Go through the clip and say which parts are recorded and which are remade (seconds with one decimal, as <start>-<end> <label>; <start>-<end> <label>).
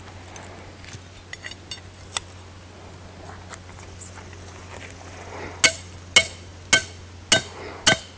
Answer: 0.0-8.2 recorded